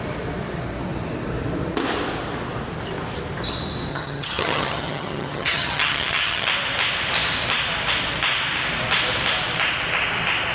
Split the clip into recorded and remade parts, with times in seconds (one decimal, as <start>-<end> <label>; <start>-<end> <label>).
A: 0.0-3.9 recorded; 3.9-6.5 remade; 6.5-10.5 recorded

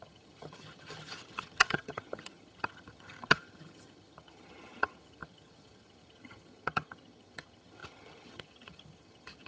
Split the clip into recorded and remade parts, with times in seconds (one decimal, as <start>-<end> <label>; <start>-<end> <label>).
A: 0.0-9.5 remade

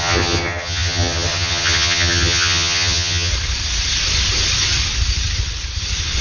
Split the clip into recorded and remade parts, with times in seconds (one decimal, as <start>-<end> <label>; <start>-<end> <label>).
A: 0.0-3.3 remade; 3.3-6.2 recorded

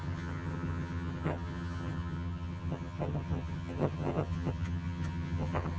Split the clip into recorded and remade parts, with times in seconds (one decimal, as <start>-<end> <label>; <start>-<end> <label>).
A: 0.0-5.8 remade

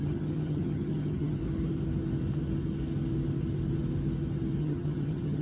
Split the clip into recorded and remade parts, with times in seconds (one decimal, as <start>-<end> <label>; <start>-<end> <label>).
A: 0.0-1.4 remade; 1.4-4.6 recorded; 4.6-5.4 remade